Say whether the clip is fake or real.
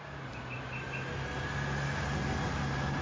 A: real